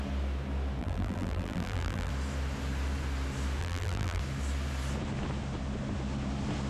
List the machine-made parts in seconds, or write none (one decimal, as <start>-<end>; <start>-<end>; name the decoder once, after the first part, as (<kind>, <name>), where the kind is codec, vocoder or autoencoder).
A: 0.8-2.1 (vocoder, BigVGAN v2); 3.6-4.2